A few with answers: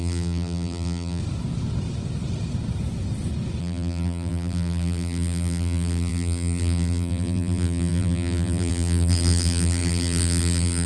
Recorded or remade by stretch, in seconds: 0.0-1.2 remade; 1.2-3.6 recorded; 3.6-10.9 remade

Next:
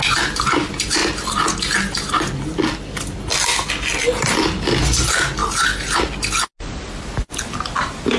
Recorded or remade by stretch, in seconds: 0.0-8.2 recorded

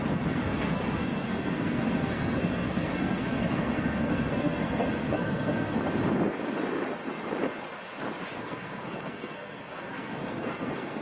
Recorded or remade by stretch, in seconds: 0.0-5.8 remade; 5.8-8.4 recorded; 8.4-11.0 remade

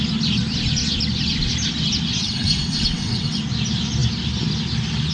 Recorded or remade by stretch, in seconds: 0.0-2.2 recorded; 2.2-3.4 remade; 3.4-5.1 recorded

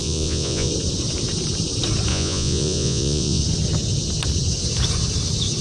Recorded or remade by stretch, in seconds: 0.0-0.7 remade; 0.7-2.1 recorded; 2.1-3.4 remade; 3.4-5.6 recorded

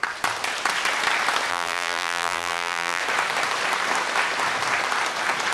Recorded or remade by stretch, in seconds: 0.0-1.5 recorded; 1.5-3.0 remade; 3.0-5.5 recorded

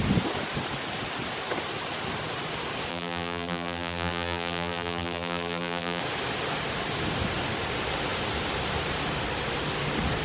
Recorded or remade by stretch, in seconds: 0.0-2.9 recorded; 2.9-6.0 remade; 6.0-10.2 recorded